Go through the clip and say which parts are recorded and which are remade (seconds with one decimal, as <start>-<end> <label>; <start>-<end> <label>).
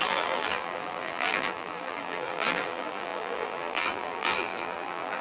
0.0-5.2 remade